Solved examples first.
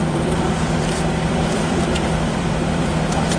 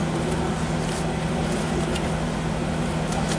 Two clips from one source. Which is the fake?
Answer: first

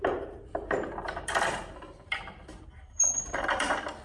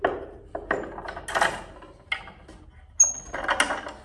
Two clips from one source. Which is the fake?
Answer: first